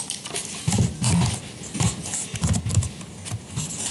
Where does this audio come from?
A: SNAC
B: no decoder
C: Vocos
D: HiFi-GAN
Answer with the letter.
B